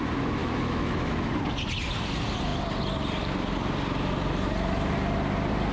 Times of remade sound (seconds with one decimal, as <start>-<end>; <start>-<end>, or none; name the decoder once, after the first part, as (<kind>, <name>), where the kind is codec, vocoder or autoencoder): 0.4-1.3 (autoencoder, DAC-VAE)